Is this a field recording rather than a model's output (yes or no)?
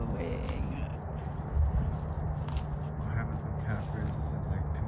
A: yes